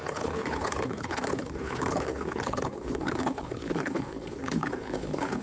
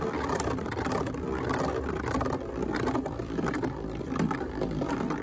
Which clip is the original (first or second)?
second